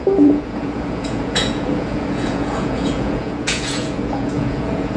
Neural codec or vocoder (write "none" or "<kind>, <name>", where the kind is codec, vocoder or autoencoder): vocoder, Vocos